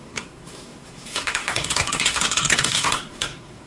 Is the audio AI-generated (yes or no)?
yes